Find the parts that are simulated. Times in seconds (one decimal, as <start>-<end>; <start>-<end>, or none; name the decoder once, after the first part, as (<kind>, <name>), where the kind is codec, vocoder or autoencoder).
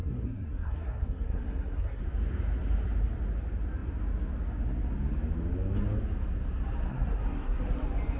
0.0-2.0 (codec, SNAC); 6.9-7.6